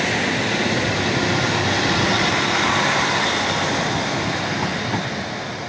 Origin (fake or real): real